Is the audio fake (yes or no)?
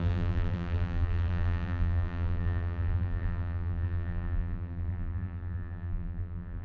yes